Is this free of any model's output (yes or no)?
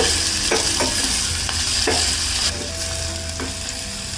yes